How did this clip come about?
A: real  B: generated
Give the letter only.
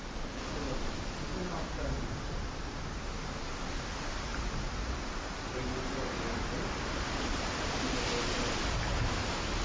A